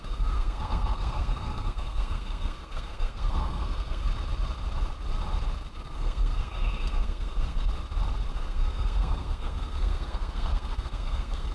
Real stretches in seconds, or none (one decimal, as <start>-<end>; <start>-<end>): 4.1-5.7; 7.7-8.3